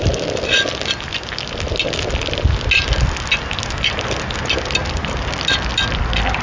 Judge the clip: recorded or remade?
recorded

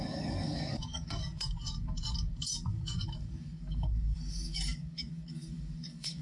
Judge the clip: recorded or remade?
remade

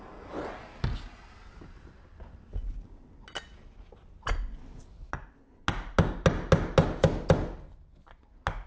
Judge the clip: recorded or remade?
recorded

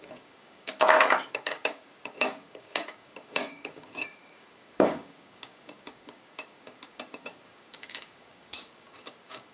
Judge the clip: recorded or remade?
remade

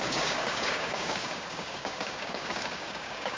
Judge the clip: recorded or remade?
remade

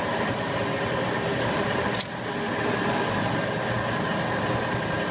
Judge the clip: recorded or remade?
recorded